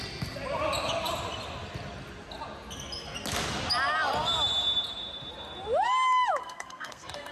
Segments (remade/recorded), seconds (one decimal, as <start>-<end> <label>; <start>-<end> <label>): 0.0-6.4 recorded; 6.4-7.3 remade

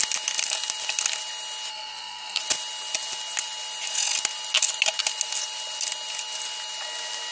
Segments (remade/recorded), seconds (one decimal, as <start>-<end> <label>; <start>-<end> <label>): 0.0-1.7 recorded; 1.7-2.4 remade; 2.4-7.3 recorded